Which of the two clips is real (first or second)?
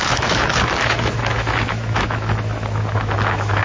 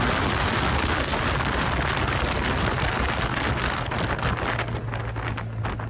second